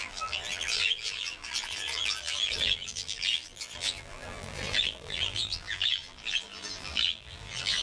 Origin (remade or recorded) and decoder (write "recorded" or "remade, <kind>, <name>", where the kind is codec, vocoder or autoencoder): remade, vocoder, BigVGAN v2